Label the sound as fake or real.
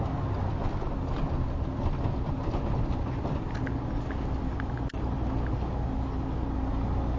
real